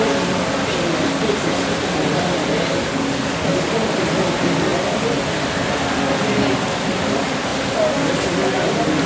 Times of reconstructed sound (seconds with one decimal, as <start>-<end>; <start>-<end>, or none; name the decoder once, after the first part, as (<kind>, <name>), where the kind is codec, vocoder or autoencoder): 2.7-3.5 (codec, DAC)